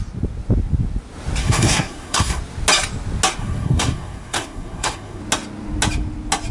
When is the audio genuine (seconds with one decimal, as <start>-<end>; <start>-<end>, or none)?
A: 0.0-1.4; 2.4-3.4; 5.2-6.5